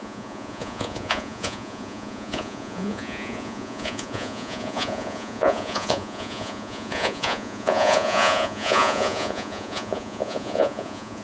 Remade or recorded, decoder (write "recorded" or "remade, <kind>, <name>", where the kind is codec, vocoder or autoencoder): remade, vocoder, Vocos